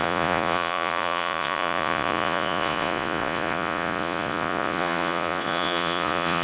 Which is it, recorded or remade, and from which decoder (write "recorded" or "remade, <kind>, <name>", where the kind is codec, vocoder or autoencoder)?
remade, vocoder, Vocos